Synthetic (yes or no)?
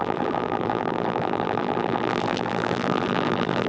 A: yes